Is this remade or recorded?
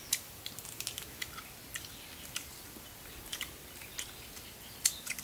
recorded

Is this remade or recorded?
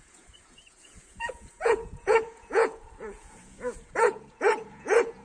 remade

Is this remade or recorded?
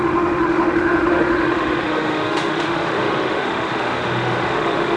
remade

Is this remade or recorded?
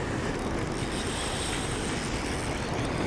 recorded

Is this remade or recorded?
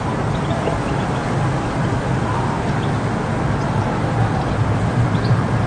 recorded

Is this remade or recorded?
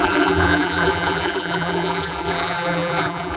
remade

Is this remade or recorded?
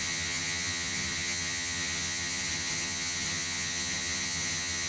remade